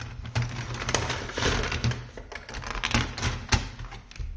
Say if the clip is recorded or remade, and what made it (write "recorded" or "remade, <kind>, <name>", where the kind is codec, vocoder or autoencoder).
recorded